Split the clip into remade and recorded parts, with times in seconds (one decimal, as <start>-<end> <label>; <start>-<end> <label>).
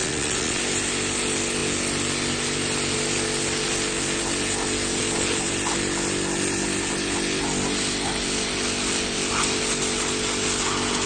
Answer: 0.0-0.6 remade; 0.6-11.1 recorded